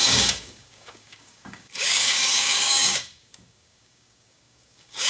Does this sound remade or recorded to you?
remade